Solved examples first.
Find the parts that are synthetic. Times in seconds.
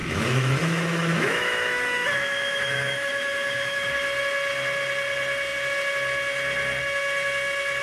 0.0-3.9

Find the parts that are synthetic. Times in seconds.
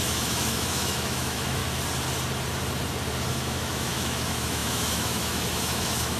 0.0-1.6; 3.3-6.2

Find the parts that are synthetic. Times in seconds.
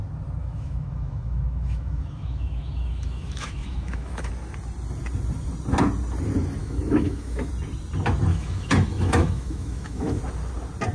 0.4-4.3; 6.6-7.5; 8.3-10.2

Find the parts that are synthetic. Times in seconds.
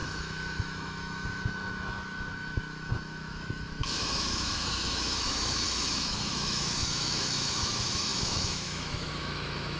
0.0-9.8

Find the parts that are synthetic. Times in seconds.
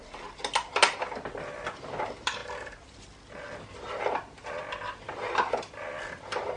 none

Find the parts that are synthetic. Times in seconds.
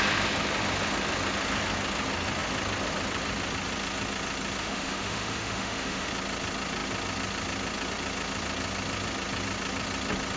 4.6-6.1